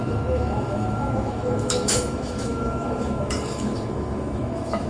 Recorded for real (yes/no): no